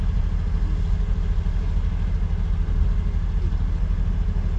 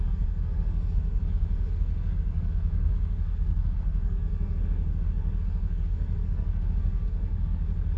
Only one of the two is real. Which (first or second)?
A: first